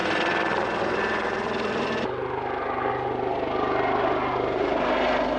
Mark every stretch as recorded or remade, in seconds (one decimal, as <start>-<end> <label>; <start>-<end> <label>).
0.0-5.4 recorded